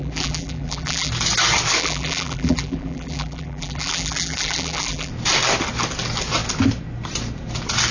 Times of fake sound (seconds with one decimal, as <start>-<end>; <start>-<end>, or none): 0.0-1.1; 1.8-5.1

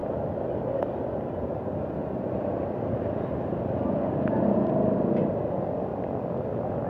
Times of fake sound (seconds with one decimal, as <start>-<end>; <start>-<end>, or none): none

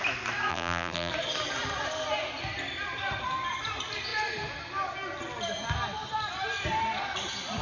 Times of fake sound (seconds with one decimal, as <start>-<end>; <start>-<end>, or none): 0.5-1.1

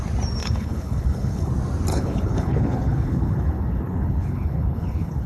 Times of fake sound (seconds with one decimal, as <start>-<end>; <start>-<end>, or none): 0.4-1.5; 1.9-5.3